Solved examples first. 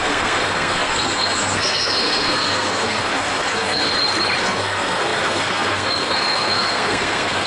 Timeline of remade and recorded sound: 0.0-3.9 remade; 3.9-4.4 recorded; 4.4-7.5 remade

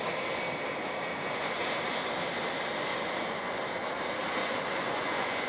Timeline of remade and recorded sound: 0.0-1.1 recorded; 1.1-1.7 remade; 1.7-2.9 recorded; 2.9-3.6 remade; 3.6-4.4 recorded; 4.4-5.5 remade

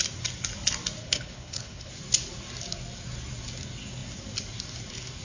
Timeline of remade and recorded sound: 0.0-1.0 recorded; 1.0-1.9 remade; 1.9-5.2 recorded